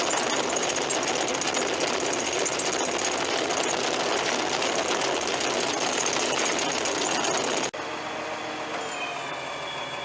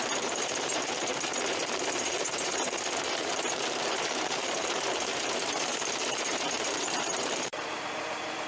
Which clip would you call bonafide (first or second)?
first